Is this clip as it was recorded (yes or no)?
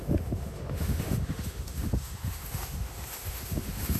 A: no